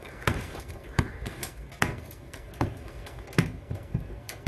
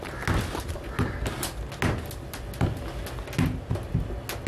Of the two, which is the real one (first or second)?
second